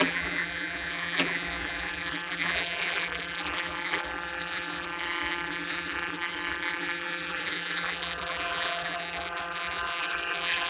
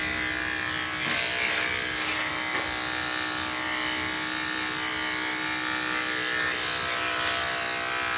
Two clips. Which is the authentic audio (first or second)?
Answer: second